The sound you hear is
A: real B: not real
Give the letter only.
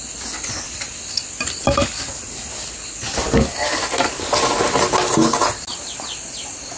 A